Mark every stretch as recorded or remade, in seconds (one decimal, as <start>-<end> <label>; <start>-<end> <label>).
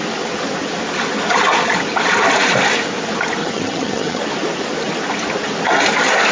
0.0-3.4 recorded; 3.4-4.2 remade; 4.2-6.3 recorded